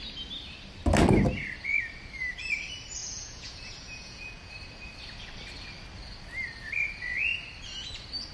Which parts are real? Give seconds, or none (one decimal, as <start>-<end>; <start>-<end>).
0.0-3.0; 4.5-8.3